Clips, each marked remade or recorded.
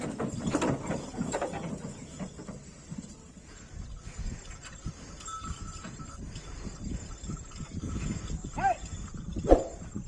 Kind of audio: recorded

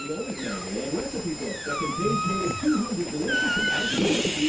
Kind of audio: recorded